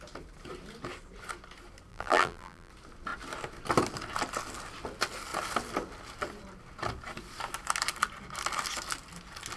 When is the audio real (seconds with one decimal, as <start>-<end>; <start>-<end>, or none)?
0.0-1.9; 2.7-9.6